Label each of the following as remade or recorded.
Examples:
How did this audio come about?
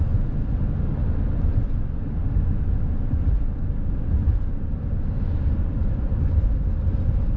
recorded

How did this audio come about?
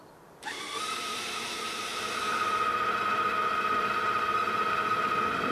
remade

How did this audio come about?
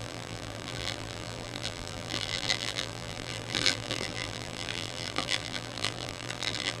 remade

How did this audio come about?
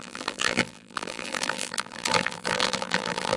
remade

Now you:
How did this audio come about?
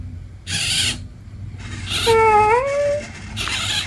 recorded